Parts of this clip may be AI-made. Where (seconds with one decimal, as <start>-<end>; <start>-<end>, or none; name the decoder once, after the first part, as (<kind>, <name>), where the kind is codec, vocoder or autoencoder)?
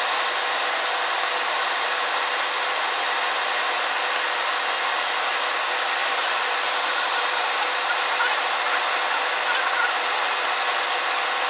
6.0-7.9 (vocoder, BigVGAN v2)